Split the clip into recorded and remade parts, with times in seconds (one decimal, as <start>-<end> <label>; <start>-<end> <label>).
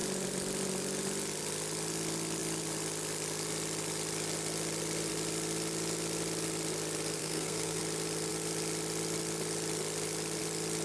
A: 0.0-7.2 recorded; 7.2-7.8 remade; 7.8-10.8 recorded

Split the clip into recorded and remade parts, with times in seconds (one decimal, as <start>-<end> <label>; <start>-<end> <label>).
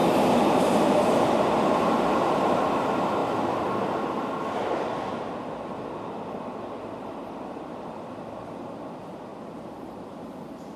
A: 0.0-0.6 remade; 0.6-3.2 recorded; 3.2-4.1 remade; 4.1-5.1 recorded; 5.1-8.4 remade; 8.4-9.3 recorded; 9.3-9.8 remade; 9.8-10.8 recorded